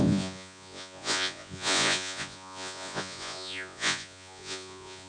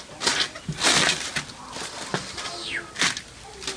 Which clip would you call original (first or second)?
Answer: second